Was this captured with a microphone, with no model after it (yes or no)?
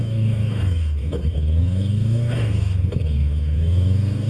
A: no